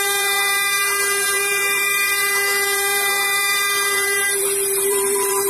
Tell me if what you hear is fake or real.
fake